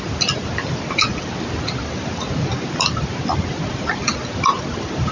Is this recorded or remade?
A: recorded